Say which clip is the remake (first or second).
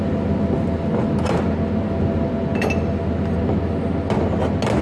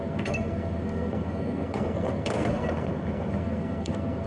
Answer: second